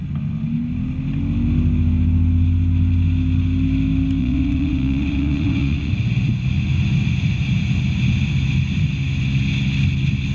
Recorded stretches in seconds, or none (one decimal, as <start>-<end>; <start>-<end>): 0.0-4.2; 5.9-10.3